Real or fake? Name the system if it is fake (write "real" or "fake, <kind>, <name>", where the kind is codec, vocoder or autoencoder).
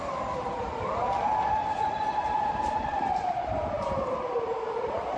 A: fake, vocoder, BigVGAN v2